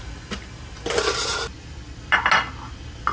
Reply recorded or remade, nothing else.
recorded